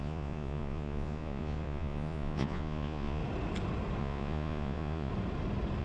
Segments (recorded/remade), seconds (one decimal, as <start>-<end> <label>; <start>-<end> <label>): 0.0-3.2 remade; 3.2-4.0 recorded; 4.0-5.1 remade; 5.1-5.8 recorded